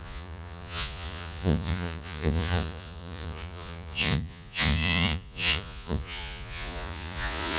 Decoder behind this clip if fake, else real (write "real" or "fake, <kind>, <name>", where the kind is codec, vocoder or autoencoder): fake, vocoder, Vocos